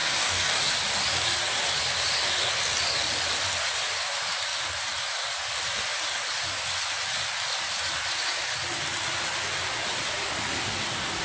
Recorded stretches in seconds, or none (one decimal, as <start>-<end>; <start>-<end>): 0.6-11.2